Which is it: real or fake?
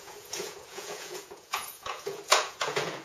fake